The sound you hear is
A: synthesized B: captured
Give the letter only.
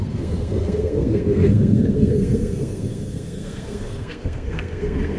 A